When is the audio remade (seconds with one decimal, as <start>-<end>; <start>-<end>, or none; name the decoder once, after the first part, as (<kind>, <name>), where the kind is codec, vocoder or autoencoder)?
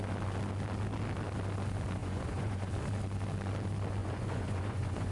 2.0-2.7 (vocoder, Vocos); 4.0-5.1